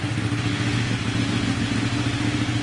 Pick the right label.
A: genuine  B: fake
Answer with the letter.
A